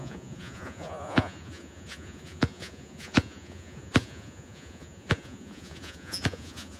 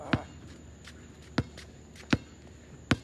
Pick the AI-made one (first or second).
first